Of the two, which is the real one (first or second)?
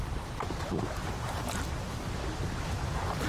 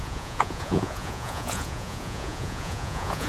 first